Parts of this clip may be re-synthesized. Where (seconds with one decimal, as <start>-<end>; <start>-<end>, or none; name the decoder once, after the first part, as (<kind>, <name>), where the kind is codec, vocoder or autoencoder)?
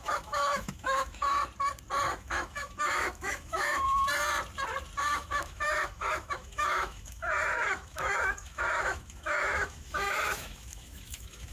0.0-1.4 (autoencoder, DAC-VAE); 2.1-4.1; 5.0-11.5